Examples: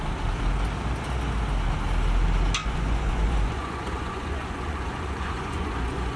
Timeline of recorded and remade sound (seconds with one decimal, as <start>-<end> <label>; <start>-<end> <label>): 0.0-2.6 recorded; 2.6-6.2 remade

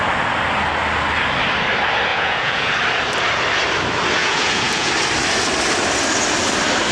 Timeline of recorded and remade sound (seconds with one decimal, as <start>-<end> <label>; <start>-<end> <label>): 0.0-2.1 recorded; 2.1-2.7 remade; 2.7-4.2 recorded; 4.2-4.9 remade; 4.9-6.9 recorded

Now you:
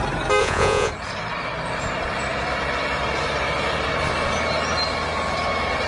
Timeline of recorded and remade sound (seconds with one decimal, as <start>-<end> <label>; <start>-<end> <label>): 0.0-0.4 recorded; 0.4-0.9 remade; 0.9-5.9 recorded

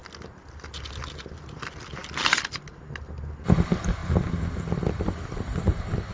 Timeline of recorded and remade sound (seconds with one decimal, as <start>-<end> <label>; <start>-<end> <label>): 0.0-6.1 recorded

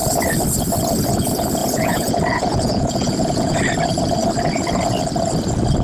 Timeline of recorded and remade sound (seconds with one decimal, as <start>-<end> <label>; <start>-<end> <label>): 0.0-1.6 recorded; 1.6-3.6 remade; 3.6-5.8 recorded